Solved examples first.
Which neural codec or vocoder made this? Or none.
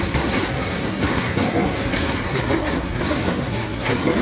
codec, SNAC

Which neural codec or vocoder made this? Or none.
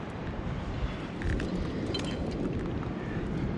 none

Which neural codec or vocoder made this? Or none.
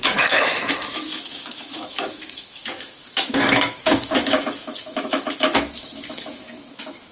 autoencoder, DAC-VAE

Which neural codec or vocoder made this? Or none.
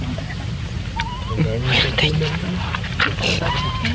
none